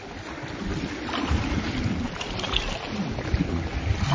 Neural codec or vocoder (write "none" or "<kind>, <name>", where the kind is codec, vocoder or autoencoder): none